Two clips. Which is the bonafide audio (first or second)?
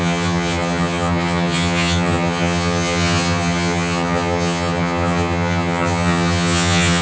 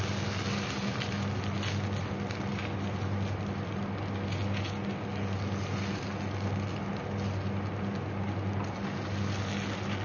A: second